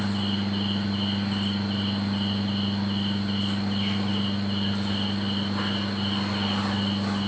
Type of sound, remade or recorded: recorded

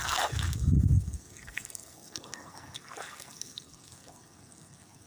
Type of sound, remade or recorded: remade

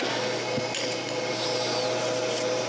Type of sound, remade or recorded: recorded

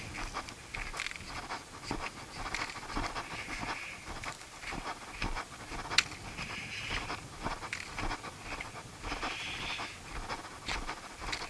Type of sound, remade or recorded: recorded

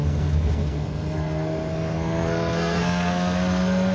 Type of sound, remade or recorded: remade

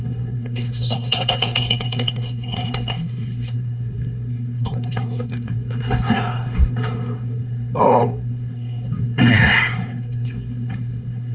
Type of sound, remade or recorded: remade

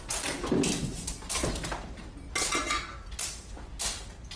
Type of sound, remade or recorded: recorded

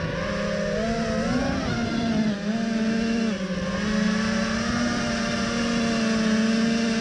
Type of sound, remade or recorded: recorded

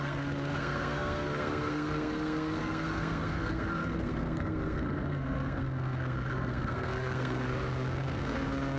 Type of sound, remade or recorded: remade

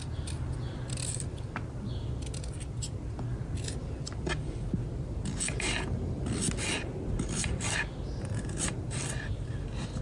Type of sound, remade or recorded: recorded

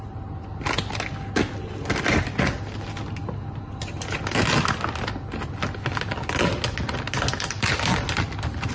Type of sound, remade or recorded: recorded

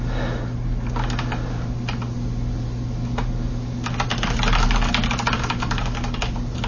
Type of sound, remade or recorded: recorded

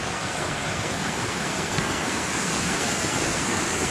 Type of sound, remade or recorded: remade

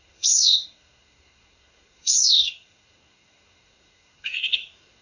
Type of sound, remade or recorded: remade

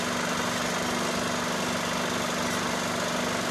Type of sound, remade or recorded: recorded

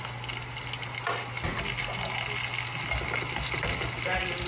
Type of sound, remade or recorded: recorded